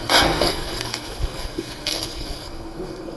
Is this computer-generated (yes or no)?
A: yes